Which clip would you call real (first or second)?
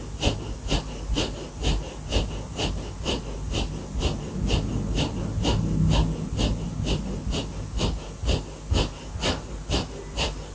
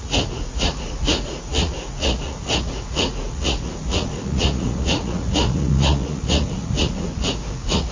first